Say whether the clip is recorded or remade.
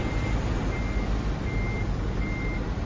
recorded